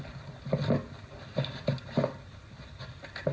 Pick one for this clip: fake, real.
real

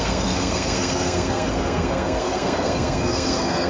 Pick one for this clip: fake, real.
fake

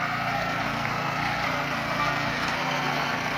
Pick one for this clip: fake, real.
fake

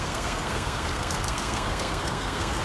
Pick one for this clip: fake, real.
fake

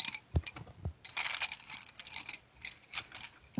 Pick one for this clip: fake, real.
real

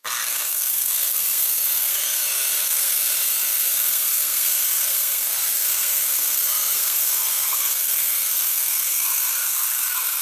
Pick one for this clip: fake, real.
fake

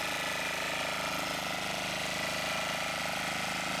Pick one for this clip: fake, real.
real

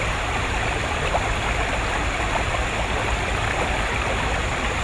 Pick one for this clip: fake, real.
real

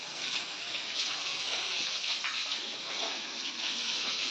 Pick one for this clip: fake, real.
fake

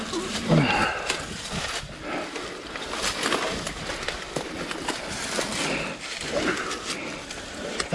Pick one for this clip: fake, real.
real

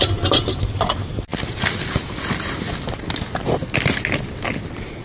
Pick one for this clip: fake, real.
real